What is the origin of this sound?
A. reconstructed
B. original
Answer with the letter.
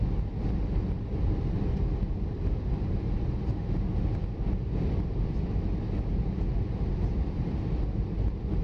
B